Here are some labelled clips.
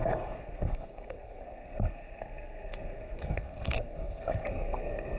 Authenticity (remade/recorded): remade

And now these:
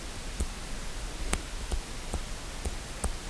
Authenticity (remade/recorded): recorded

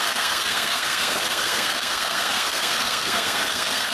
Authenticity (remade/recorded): remade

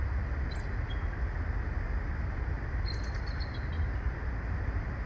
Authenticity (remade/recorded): recorded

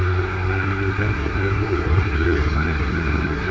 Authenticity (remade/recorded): remade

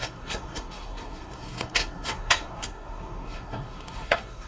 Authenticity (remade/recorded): remade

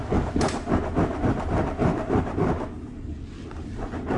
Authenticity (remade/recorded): recorded